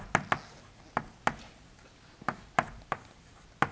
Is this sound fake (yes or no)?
no